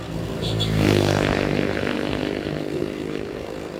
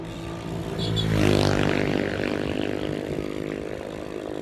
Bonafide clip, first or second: second